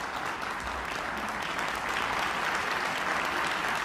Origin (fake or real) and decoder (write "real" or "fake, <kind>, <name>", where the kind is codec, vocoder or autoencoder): real